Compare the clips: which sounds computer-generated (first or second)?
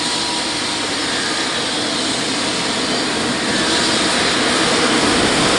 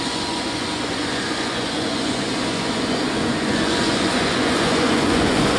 second